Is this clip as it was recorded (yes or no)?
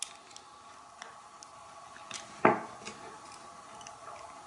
yes